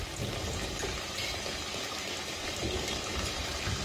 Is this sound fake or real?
fake